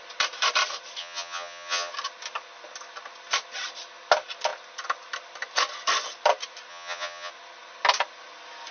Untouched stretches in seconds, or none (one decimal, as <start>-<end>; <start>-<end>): 0.0-1.0; 1.9-6.7; 7.3-8.7

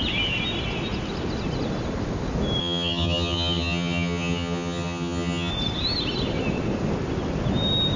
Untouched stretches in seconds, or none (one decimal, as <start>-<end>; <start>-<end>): 0.0-2.6; 5.5-8.0